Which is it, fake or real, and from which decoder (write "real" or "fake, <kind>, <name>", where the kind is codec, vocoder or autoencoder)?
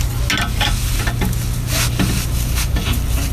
real